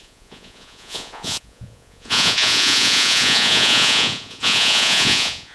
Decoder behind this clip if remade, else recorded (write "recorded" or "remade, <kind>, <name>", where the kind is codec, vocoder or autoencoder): remade, vocoder, Vocos